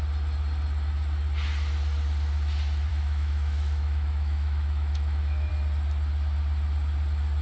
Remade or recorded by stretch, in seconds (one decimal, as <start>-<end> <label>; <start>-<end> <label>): 0.0-2.9 recorded; 2.9-5.5 remade; 5.5-7.4 recorded